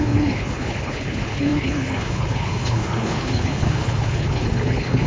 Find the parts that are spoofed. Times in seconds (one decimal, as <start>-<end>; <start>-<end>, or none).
0.0-5.1